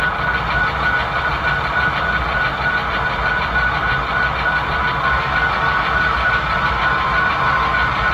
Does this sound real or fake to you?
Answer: real